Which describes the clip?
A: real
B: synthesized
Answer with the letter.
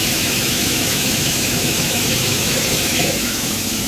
B